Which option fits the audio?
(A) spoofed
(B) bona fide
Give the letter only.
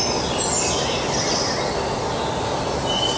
B